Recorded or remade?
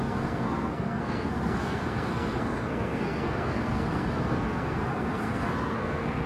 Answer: remade